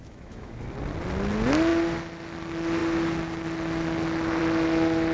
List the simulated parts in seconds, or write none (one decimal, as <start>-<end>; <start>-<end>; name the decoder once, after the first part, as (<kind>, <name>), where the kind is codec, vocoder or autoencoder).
0.0-0.6 (autoencoder, DAC-VAE)